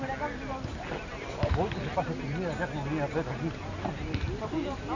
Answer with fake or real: real